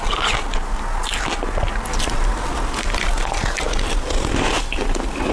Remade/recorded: recorded